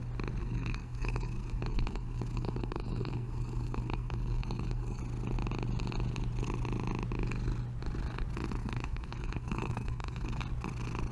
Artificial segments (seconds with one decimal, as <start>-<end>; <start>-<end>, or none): 0.4-5.0; 8.6-10.4